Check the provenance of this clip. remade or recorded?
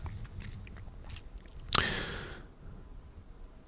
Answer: recorded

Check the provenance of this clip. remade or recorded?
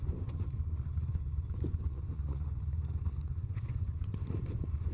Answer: remade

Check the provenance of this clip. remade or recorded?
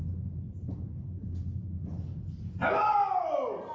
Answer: recorded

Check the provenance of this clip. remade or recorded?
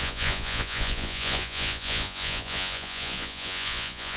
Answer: remade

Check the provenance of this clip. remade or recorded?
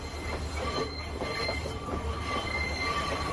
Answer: recorded